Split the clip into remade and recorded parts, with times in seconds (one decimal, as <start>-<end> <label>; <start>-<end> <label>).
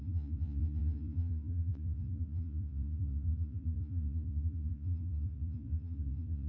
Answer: 0.0-6.5 remade